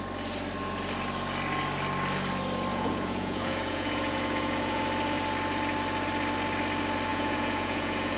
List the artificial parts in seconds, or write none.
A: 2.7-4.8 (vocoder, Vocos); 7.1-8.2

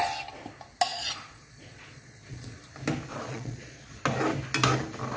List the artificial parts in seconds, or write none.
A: 0.9-2.7 (vocoder, Vocos); 3.1-4.0

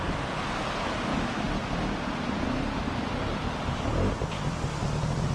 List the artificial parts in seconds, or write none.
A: none

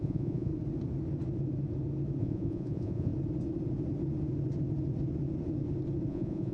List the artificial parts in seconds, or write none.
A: 0.0-0.5 (vocoder, Vocos); 2.2-3.1; 6.1-6.5

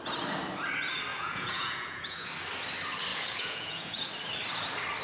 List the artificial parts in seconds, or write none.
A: 1.1-2.3 (vocoder, Vocos); 3.1-4.1

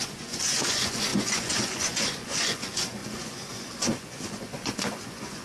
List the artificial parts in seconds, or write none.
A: 0.0-5.4 (vocoder, Vocos)

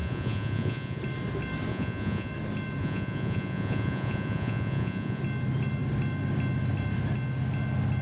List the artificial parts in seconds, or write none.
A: 0.0-1.0 (vocoder, Vocos); 1.7-2.3; 2.8-5.2